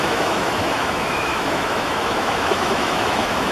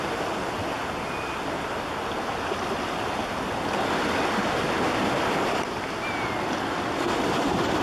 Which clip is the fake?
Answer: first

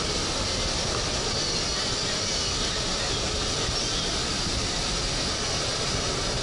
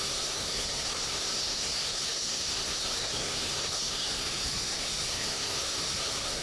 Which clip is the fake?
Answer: second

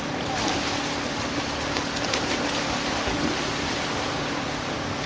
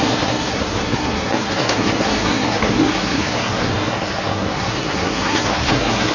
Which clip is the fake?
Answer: second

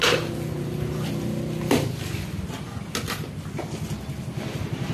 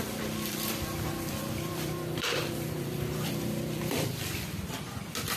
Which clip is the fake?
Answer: second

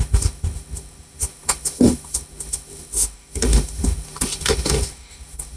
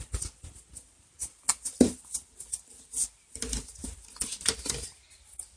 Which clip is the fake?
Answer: first